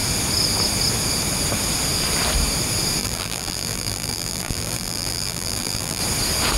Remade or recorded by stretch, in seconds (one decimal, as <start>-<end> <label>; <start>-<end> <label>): 0.0-3.0 recorded; 3.0-6.0 remade; 6.0-6.6 recorded